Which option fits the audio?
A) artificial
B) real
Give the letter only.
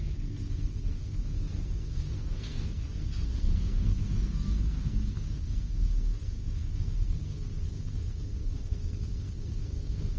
A